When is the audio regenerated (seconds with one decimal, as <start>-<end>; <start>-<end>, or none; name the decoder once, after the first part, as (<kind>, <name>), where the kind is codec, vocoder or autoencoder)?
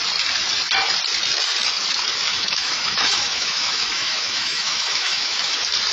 2.3-5.4 (autoencoder, DAC-VAE)